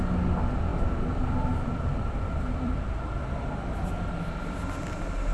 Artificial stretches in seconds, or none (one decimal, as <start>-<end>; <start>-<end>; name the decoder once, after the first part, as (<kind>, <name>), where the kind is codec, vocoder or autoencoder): 0.7-3.9 (vocoder, BigVGAN v2)